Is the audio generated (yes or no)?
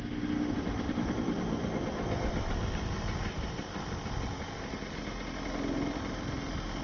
no